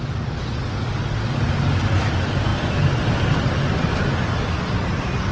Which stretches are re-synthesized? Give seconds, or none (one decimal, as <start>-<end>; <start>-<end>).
none